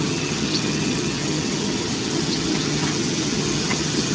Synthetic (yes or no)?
yes